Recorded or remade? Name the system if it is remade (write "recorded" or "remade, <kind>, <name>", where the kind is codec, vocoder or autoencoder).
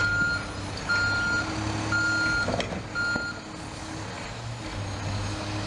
recorded